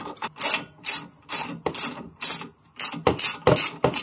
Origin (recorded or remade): recorded